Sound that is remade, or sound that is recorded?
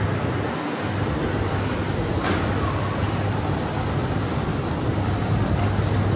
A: recorded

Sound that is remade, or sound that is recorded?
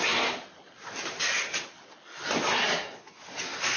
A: recorded